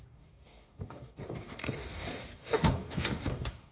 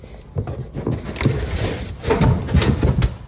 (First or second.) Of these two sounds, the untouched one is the second